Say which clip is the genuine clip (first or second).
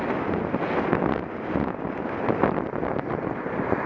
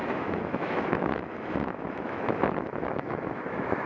first